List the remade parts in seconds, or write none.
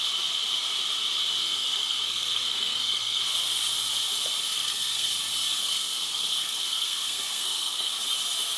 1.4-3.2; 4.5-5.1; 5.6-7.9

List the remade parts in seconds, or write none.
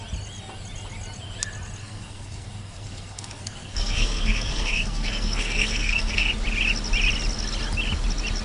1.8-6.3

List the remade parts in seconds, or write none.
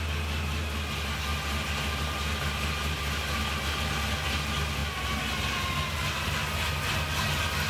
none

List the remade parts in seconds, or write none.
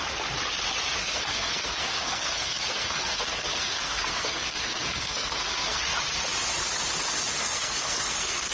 1.0-5.8; 7.4-8.5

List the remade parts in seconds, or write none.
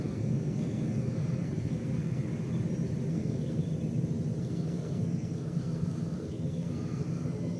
0.0-2.3; 3.1-3.6; 4.4-7.6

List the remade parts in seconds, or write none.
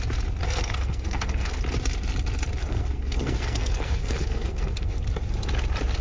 0.4-1.6; 2.6-5.0